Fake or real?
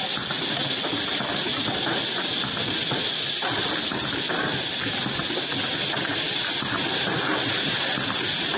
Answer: real